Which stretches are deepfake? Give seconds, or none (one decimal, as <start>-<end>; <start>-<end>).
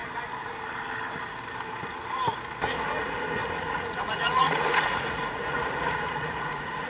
3.4-6.9